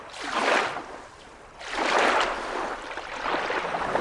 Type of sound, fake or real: real